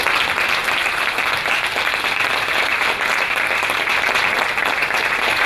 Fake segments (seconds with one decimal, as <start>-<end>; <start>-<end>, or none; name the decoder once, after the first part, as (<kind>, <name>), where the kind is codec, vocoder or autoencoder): 0.6-3.9 (vocoder, BigVGAN v2); 4.6-5.5